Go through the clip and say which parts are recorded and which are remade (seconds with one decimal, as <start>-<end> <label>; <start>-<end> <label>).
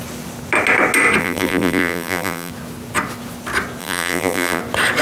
0.0-1.2 recorded; 1.2-2.5 remade; 2.5-3.8 recorded; 3.8-4.6 remade; 4.6-5.0 recorded